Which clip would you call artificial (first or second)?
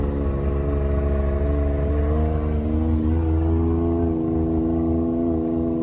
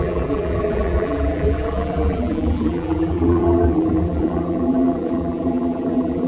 second